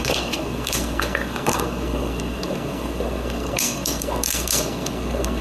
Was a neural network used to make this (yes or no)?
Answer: yes